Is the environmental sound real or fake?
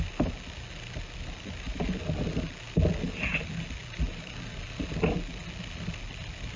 real